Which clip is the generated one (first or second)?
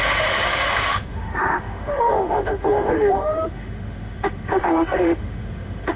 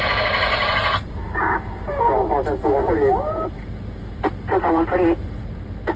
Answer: first